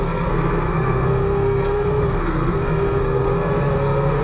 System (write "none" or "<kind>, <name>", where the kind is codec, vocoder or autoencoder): codec, SNAC